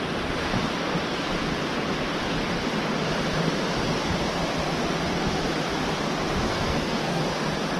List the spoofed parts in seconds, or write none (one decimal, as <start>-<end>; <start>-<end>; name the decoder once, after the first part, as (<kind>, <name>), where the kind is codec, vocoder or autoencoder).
6.5-7.2 (codec, SNAC)